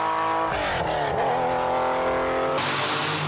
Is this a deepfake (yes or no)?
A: no